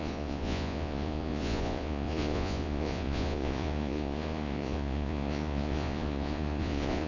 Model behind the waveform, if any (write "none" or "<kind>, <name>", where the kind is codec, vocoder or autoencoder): vocoder, Vocos